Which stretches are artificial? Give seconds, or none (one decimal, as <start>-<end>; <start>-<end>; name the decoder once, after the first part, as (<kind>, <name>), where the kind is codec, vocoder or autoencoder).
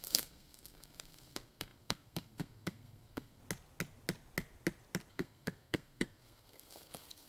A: 0.0-3.4 (codec, SNAC); 5.1-7.3